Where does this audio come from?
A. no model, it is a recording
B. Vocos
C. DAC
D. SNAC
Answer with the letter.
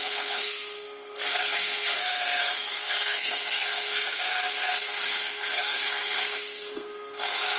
D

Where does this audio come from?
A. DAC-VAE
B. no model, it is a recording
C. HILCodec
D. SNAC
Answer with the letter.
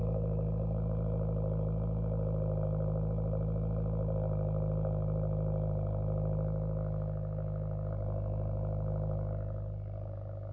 B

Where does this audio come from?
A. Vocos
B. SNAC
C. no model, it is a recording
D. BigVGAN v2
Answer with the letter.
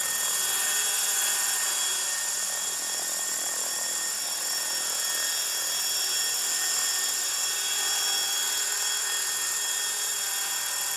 C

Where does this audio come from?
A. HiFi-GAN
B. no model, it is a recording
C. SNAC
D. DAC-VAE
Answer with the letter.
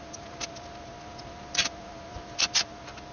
B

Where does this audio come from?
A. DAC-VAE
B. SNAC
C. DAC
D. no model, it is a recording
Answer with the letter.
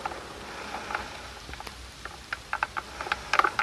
D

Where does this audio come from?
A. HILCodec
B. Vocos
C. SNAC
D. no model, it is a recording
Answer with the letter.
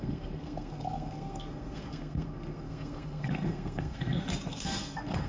C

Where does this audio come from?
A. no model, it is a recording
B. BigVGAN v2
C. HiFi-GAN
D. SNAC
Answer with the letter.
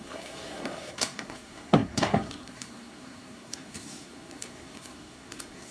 D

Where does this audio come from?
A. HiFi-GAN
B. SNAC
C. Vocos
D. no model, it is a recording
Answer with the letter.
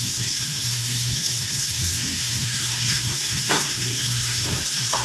B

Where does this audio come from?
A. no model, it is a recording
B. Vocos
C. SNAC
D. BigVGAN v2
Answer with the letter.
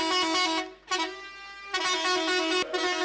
A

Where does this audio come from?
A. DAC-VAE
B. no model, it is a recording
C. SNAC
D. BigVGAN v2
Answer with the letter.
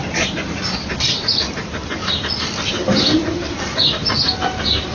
B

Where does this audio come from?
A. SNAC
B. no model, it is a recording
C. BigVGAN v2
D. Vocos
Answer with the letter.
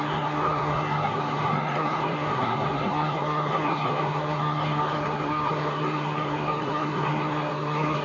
A